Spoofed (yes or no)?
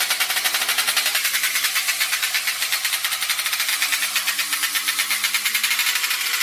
no